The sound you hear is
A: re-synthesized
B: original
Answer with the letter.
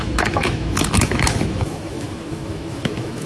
A